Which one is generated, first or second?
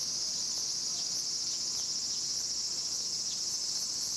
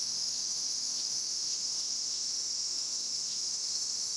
second